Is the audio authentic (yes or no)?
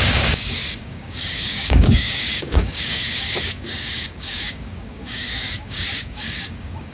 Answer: no